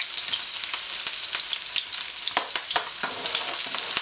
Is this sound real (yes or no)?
yes